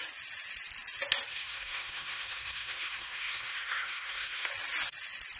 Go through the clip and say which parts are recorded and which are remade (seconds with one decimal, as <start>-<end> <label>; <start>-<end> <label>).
0.0-1.3 recorded; 1.3-4.5 remade; 4.5-5.4 recorded